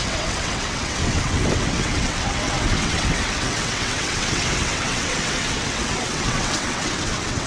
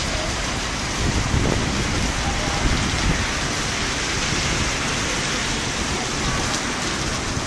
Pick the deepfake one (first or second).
first